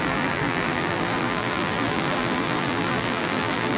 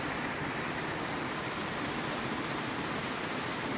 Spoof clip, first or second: first